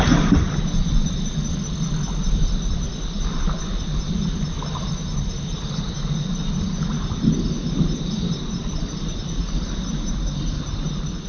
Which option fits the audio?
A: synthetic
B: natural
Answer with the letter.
B